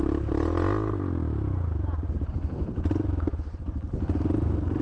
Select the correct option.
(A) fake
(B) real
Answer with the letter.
B